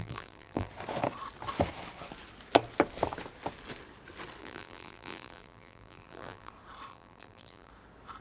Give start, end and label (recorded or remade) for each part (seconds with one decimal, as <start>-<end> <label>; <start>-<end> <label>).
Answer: 0.0-0.7 remade; 0.7-4.4 recorded; 4.4-6.5 remade; 6.5-6.9 recorded; 6.9-7.7 remade; 7.7-8.2 recorded